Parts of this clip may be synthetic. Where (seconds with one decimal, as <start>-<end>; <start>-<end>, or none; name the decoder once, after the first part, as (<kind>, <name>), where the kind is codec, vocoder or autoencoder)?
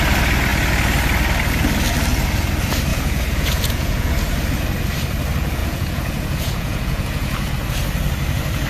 2.9-4.1 (vocoder, Vocos); 5.6-7.5